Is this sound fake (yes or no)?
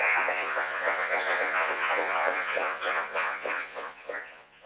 yes